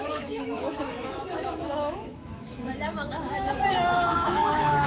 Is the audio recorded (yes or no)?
no